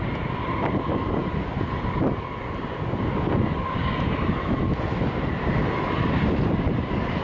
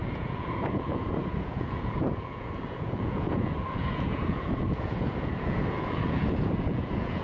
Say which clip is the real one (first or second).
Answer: first